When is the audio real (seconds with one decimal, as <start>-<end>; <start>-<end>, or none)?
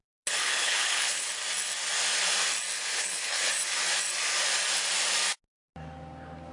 0.0-0.4; 1.3-2.9; 3.5-6.5